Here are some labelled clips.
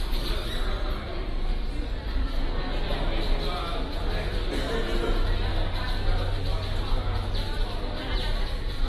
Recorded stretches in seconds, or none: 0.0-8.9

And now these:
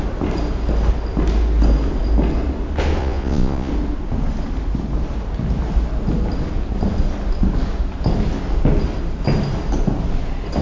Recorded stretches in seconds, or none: 0.0-3.0; 3.7-10.6

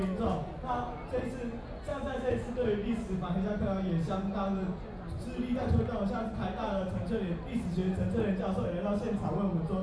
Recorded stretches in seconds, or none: 0.0-1.9; 2.5-9.8